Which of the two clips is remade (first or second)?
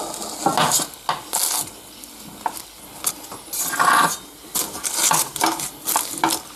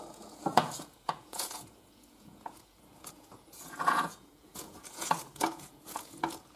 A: second